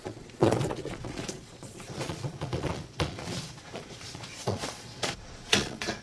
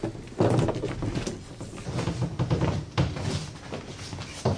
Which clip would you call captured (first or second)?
second